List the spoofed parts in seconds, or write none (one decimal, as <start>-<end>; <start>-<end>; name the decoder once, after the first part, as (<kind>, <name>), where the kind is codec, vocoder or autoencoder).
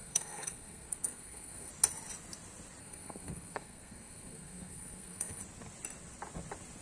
0.0-1.7 (codec, SNAC); 2.8-5.4